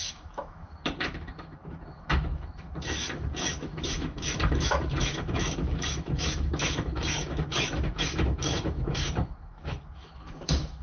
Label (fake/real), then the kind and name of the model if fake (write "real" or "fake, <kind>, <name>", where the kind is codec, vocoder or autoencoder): fake, autoencoder, DAC-VAE